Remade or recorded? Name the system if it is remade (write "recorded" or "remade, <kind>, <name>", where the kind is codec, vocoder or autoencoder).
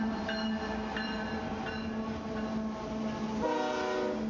recorded